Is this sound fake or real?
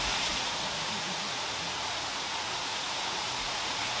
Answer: fake